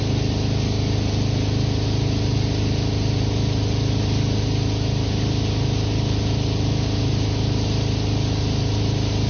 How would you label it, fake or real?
real